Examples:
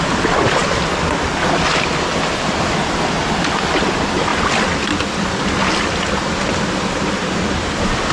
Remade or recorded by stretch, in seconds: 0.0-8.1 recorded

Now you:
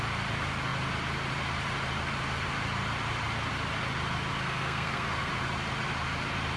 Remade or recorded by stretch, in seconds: 0.0-4.3 recorded; 4.3-5.3 remade; 5.3-6.6 recorded

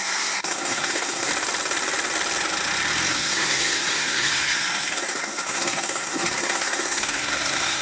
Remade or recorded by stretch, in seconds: 0.0-1.3 remade; 1.3-3.1 recorded; 3.1-7.8 remade

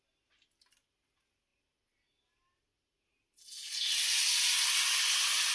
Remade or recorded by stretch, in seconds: 0.0-5.5 recorded

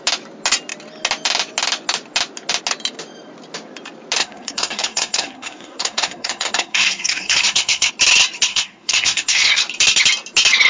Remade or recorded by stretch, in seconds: 0.0-4.2 recorded; 4.2-7.9 remade; 7.9-8.5 recorded; 8.5-9.6 remade; 9.6-10.7 recorded

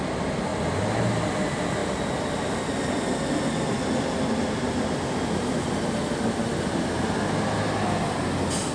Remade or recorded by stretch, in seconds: 0.0-8.7 recorded

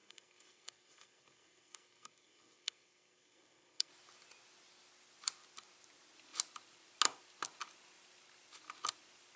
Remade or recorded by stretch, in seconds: 0.0-3.9 remade; 3.9-9.4 recorded

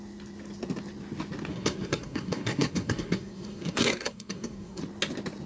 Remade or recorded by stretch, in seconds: 0.0-1.5 recorded; 1.5-4.8 remade; 4.8-5.5 recorded